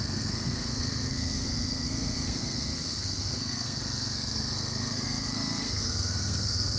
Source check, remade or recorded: remade